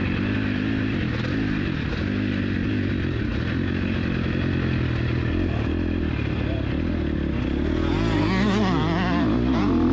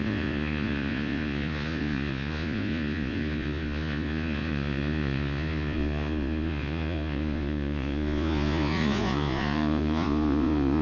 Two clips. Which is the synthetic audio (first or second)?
second